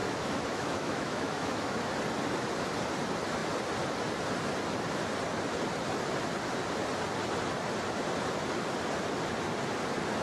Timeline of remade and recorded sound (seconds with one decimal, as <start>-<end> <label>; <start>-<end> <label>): 0.0-1.9 remade; 1.9-10.2 recorded